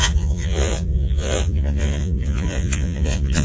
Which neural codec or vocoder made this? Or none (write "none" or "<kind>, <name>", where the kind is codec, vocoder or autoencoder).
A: vocoder, Vocos